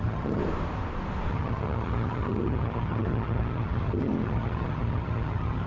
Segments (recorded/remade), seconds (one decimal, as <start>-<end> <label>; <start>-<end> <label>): 0.0-0.4 remade; 0.4-1.3 recorded; 1.3-5.7 remade